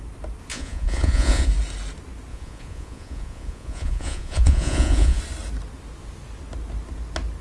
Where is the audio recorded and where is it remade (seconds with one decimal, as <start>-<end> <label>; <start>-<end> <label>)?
0.0-0.5 recorded; 0.5-1.5 remade; 1.5-2.3 recorded; 2.3-5.2 remade; 5.2-7.4 recorded